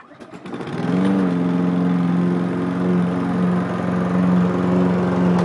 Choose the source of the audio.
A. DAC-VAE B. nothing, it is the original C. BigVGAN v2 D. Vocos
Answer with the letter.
B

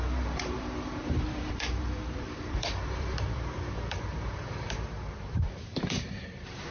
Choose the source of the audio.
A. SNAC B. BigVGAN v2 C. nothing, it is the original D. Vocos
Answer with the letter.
B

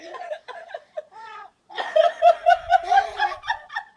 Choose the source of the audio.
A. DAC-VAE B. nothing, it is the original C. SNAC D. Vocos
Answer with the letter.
D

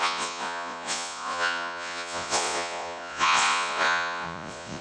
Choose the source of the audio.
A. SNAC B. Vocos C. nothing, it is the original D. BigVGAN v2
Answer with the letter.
B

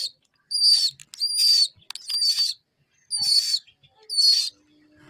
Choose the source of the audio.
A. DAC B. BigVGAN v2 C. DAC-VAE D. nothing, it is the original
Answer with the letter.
D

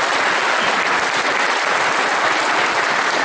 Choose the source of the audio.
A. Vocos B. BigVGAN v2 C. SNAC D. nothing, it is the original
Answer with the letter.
D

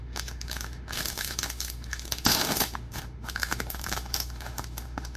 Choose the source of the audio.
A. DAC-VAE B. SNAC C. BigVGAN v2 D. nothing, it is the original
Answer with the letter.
A